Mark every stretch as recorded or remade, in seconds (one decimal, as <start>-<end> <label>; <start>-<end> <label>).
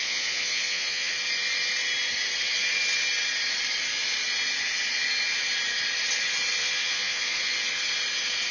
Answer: 0.0-1.1 remade; 1.1-6.6 recorded; 6.6-7.5 remade; 7.5-8.5 recorded